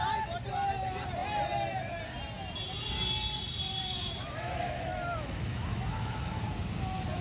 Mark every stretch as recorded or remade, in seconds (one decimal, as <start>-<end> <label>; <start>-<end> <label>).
0.0-3.8 recorded; 3.8-6.4 remade; 6.4-7.2 recorded